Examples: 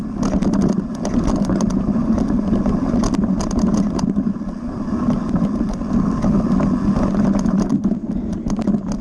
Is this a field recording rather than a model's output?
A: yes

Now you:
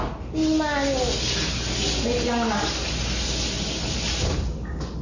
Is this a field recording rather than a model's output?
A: yes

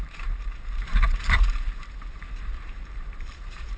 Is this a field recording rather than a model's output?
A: no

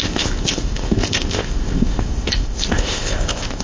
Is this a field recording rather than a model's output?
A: no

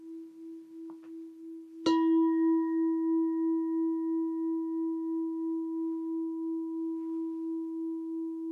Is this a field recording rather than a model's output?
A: yes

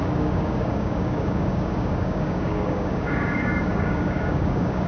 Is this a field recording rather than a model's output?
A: no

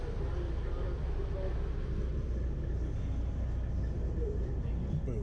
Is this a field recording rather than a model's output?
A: yes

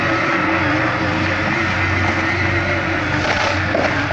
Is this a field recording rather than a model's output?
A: yes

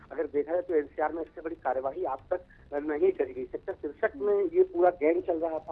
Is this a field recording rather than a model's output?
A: yes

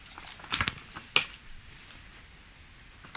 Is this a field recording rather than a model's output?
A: yes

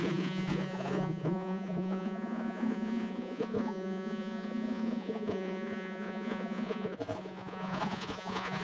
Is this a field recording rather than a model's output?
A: no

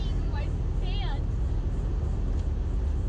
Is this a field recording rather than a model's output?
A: yes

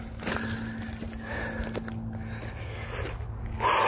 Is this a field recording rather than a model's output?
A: yes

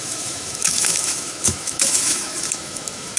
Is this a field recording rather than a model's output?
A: no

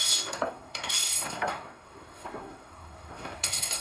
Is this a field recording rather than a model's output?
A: no